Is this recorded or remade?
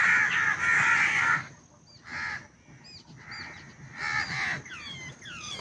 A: recorded